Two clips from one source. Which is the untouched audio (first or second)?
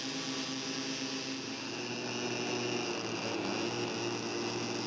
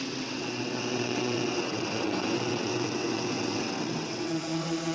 first